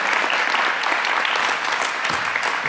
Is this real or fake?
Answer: real